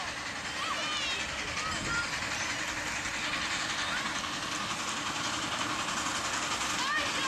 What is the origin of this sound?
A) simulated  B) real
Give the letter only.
B